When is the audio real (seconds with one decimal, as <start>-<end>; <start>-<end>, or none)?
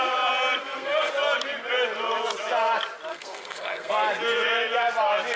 0.0-0.6; 1.1-3.1; 3.9-5.4